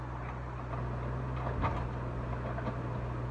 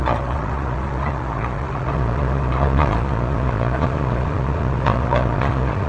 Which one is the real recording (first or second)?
first